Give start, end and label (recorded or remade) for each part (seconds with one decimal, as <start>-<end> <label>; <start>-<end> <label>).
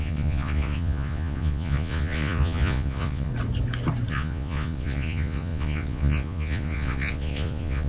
0.0-3.3 remade; 3.3-4.1 recorded; 4.1-7.9 remade